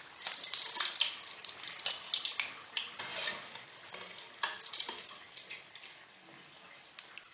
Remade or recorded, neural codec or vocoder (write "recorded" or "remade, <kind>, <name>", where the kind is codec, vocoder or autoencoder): recorded